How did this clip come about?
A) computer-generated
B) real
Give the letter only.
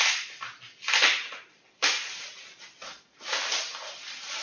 B